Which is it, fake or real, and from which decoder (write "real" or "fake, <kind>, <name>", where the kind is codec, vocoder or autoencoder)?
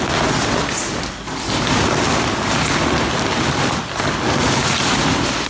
real